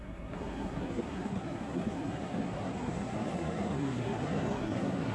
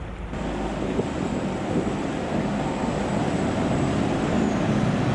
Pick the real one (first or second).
second